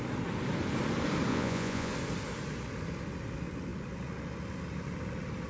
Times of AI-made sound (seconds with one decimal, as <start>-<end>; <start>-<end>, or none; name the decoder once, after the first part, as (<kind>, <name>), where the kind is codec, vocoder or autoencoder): 1.3-1.9 (vocoder, Vocos)